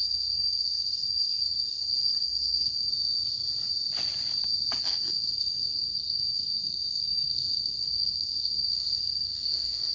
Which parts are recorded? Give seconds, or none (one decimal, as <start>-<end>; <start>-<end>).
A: 2.9-4.8